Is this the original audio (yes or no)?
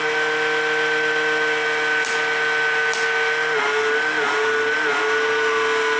yes